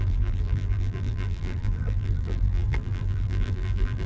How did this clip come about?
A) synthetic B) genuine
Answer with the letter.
A